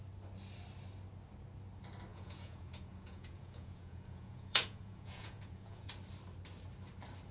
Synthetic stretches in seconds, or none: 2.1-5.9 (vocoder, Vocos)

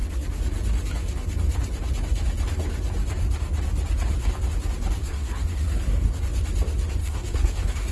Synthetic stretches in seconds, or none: 5.0-6.2 (codec, SNAC); 7.0-7.9